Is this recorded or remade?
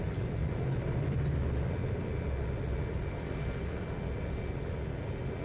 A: recorded